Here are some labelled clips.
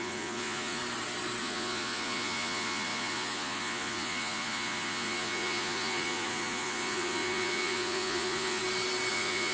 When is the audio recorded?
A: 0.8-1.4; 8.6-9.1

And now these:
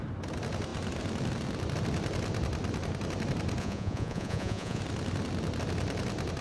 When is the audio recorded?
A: 0.0-3.6; 4.8-6.4